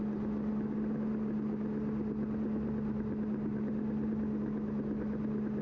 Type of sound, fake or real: real